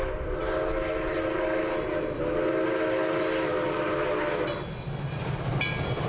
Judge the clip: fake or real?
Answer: real